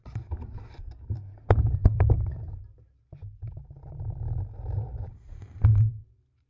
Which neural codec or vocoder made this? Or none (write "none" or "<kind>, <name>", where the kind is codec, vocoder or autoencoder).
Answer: vocoder, BigVGAN v2